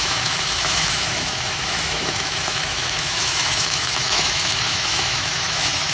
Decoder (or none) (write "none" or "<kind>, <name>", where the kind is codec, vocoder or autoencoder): autoencoder, DAC-VAE